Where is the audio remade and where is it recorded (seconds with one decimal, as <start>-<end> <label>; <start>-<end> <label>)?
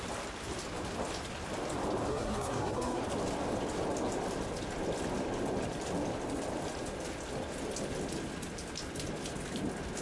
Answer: 0.0-2.1 recorded; 2.1-3.0 remade; 3.0-10.0 recorded